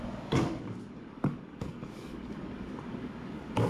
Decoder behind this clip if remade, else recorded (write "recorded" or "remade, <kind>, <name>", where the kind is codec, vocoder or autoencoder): remade, codec, DAC